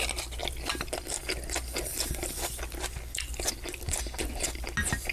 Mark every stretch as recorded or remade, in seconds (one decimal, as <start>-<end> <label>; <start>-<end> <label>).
0.0-5.1 recorded